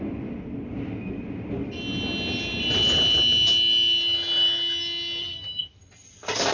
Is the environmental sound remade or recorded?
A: recorded